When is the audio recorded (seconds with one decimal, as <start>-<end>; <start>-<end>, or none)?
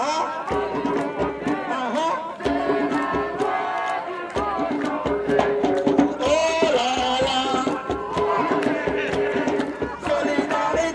0.0-6.4; 10.1-10.9